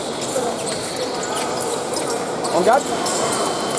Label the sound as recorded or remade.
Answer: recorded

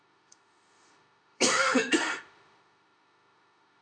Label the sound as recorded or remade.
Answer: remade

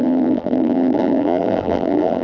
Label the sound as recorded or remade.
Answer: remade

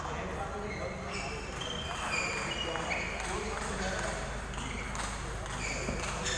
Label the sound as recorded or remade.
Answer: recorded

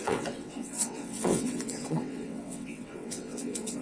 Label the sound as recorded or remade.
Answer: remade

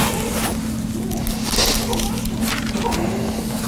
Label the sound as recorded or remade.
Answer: recorded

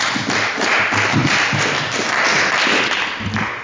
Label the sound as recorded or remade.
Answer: recorded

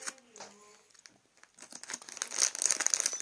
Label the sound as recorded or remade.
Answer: recorded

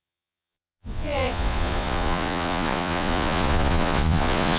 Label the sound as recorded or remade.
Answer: remade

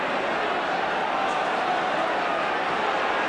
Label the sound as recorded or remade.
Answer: recorded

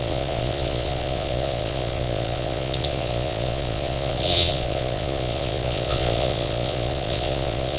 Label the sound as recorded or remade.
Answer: remade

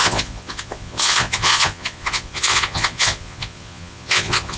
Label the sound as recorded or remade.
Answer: remade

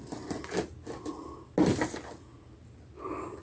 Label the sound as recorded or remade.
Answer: recorded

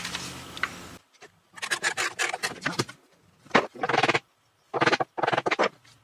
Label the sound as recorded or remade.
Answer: recorded